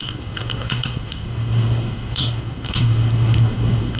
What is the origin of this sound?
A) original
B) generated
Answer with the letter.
B